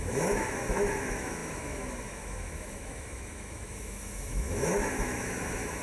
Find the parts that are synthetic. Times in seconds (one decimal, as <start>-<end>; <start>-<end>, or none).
0.0-5.8